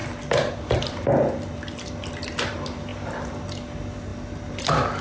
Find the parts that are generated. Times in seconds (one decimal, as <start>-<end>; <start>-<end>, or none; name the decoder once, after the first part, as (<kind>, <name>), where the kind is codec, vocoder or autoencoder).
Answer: none